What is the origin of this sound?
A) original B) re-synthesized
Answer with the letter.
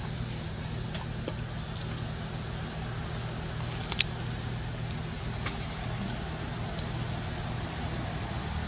A